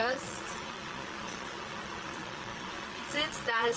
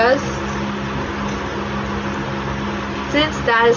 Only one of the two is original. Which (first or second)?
second